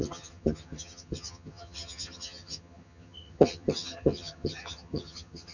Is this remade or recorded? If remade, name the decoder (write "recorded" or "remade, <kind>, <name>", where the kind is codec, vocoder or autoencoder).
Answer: remade, vocoder, HiFi-GAN